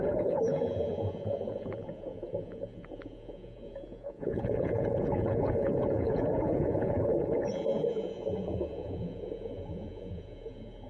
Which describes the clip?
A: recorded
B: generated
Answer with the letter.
B